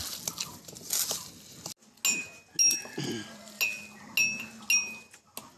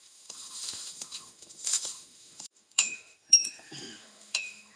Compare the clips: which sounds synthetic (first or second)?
second